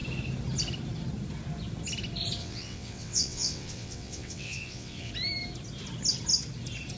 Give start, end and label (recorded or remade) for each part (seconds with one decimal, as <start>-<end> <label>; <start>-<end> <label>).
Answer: 0.0-2.4 recorded; 2.4-5.1 remade; 5.1-7.0 recorded